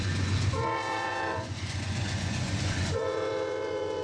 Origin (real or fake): fake